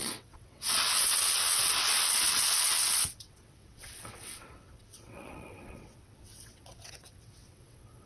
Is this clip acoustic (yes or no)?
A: no